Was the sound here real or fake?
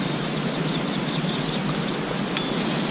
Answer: real